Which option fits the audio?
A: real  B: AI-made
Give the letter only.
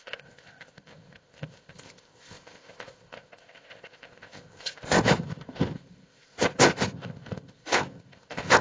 B